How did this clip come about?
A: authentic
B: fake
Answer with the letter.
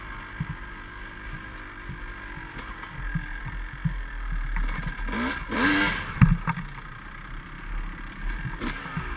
A